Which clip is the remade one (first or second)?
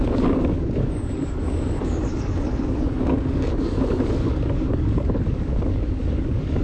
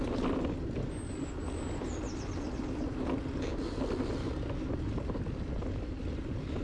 first